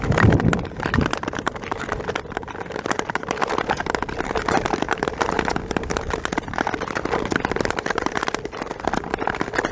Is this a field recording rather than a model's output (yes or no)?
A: yes